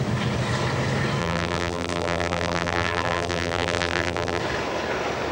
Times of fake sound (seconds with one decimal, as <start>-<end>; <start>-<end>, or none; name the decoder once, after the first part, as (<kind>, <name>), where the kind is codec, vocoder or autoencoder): 1.2-4.4 (vocoder, BigVGAN v2)